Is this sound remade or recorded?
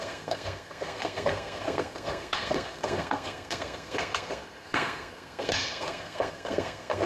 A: remade